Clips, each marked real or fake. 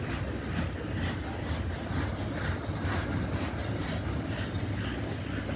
real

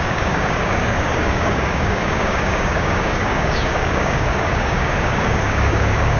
fake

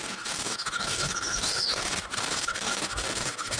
fake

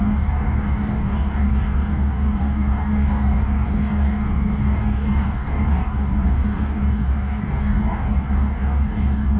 fake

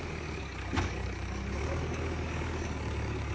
fake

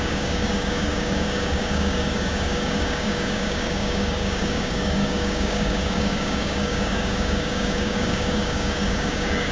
fake